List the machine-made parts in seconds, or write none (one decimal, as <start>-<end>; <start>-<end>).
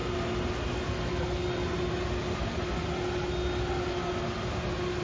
none